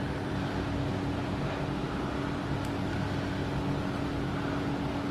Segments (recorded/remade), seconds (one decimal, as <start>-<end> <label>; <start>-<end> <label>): 0.0-5.1 recorded

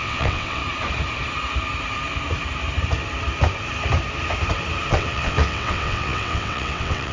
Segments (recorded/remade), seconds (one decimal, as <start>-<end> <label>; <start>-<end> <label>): 0.0-0.6 remade; 0.6-4.9 recorded; 4.9-7.1 remade

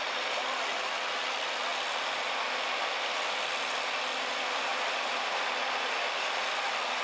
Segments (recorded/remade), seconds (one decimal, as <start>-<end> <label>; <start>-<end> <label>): 0.0-1.7 recorded; 1.7-3.5 remade; 3.5-7.0 recorded

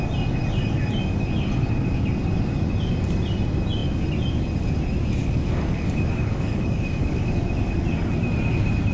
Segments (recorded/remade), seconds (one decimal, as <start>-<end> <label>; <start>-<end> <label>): 0.0-5.2 recorded; 5.2-7.2 remade; 7.2-8.9 recorded

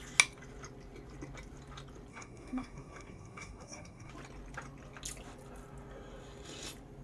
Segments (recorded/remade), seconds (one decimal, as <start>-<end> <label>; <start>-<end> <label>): 0.0-2.1 recorded; 2.1-4.1 remade; 4.1-7.0 recorded